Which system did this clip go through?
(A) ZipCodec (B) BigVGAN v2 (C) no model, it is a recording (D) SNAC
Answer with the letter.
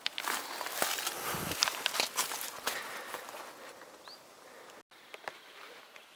C